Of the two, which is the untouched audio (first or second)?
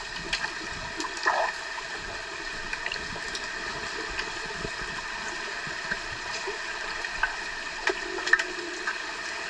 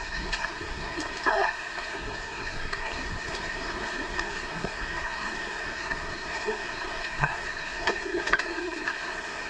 first